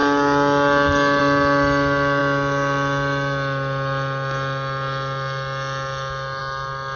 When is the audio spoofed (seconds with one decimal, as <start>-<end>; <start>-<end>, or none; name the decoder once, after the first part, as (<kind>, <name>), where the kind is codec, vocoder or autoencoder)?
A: none